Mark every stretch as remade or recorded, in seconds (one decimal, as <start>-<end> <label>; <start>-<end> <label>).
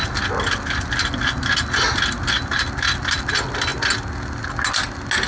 0.0-5.3 recorded